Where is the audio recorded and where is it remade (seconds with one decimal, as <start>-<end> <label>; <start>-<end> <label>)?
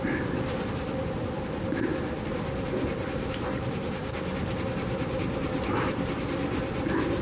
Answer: 0.0-7.2 remade